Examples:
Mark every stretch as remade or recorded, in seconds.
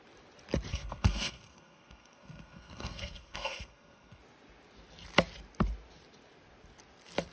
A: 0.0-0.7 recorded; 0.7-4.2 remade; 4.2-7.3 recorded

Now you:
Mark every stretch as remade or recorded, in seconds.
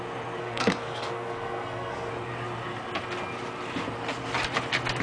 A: 0.0-0.4 recorded; 0.4-2.1 remade; 2.1-5.0 recorded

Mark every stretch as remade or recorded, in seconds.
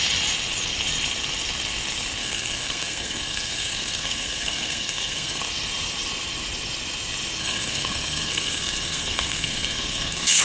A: 0.0-2.2 recorded; 2.2-5.4 remade; 5.4-7.4 recorded; 7.4-10.4 remade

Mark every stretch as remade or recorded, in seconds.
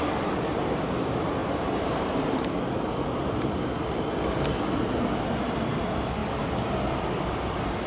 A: 0.0-7.9 recorded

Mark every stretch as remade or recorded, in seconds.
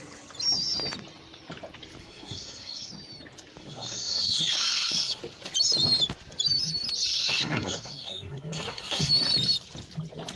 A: 0.0-2.0 recorded; 2.0-2.9 remade; 2.9-3.6 recorded; 3.6-5.2 remade; 5.2-7.1 recorded; 7.1-9.1 remade; 9.1-10.4 recorded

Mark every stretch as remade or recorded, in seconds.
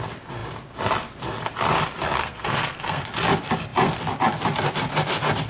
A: 0.0-2.2 recorded; 2.2-3.0 remade; 3.0-5.5 recorded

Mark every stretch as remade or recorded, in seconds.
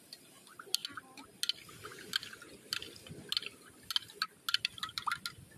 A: 0.0-5.6 recorded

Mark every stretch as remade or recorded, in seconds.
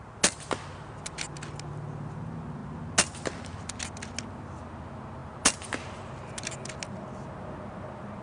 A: 0.0-8.2 recorded